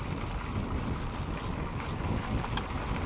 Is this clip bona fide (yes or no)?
yes